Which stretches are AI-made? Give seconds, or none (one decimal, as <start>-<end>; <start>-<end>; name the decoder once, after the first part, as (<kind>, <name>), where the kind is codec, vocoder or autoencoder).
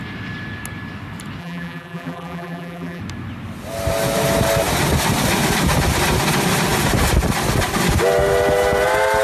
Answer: 1.4-3.0 (vocoder, BigVGAN v2)